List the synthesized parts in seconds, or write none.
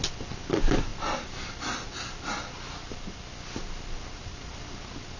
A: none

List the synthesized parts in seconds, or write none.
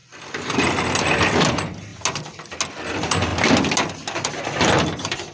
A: 1.4-1.9 (vocoder, BigVGAN v2); 2.9-3.3; 4.3-5.3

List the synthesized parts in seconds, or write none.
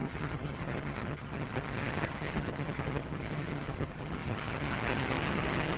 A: 0.0-5.8 (vocoder, HiFi-GAN)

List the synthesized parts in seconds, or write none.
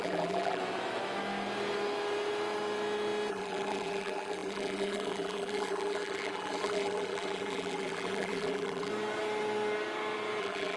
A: 0.0-0.6 (vocoder, BigVGAN v2); 3.3-8.9; 10.4-10.8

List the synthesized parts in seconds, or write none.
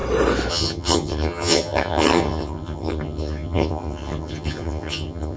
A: 0.5-5.4 (vocoder, HiFi-GAN)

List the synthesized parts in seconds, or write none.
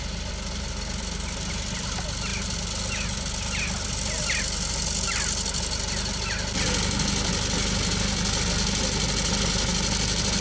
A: none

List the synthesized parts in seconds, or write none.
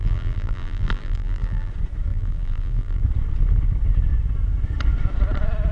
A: 0.0-1.7 (vocoder, BigVGAN v2); 2.1-3.0